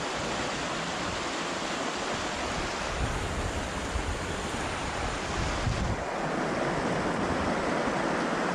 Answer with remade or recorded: recorded